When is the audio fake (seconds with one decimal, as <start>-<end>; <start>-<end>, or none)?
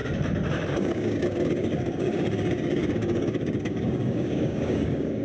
0.7-5.2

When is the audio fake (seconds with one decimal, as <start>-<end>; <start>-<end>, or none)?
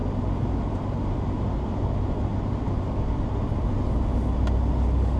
none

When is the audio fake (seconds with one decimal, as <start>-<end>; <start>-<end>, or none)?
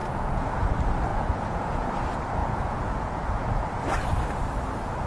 0.0-0.7; 1.1-1.9; 2.4-3.8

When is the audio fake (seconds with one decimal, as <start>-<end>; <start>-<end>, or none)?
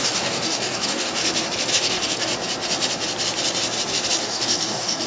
0.0-1.2; 1.7-2.3; 4.2-5.1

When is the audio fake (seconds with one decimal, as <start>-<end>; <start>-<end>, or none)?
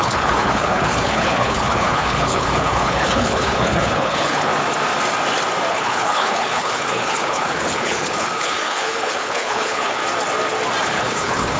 0.0-4.5; 5.7-10.0; 10.8-11.6